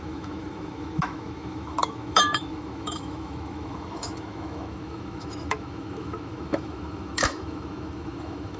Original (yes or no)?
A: no